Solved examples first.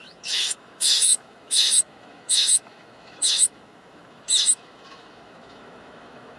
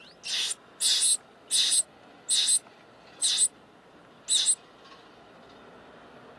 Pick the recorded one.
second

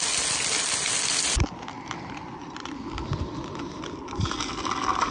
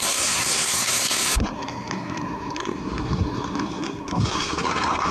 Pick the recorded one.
first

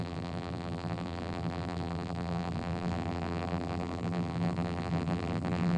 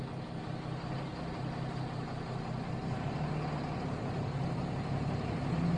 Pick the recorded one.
second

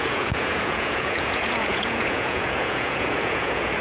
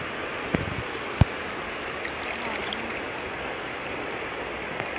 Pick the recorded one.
second